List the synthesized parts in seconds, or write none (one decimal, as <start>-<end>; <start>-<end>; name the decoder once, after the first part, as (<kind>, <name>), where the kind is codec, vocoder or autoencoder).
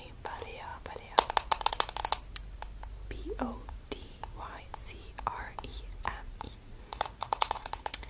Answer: 3.6-4.6 (vocoder, Vocos); 5.7-8.1